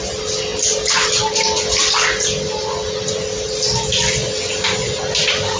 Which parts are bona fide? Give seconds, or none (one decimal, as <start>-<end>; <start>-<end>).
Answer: 0.0-5.6